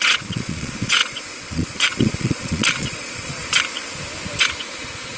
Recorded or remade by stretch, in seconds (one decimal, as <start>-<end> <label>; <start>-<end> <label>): 0.0-3.4 remade; 3.4-4.4 recorded; 4.4-5.2 remade